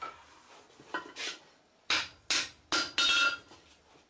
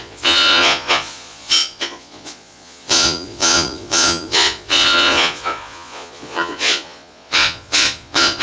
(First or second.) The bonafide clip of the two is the first